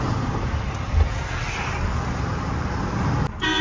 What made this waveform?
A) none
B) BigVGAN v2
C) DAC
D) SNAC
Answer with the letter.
A